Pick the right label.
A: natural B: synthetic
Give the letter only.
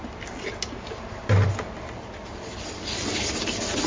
A